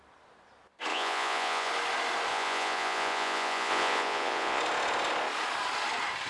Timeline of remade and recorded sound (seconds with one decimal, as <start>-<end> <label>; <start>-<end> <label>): 0.0-0.9 recorded; 0.9-1.7 remade; 1.7-2.3 recorded; 2.3-4.6 remade; 4.6-6.3 recorded